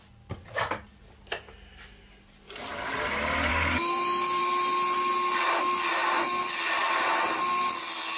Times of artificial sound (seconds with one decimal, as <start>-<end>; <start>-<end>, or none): 3.5-4.4